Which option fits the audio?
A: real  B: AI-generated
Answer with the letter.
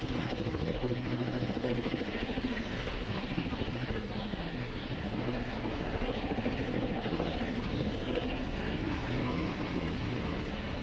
B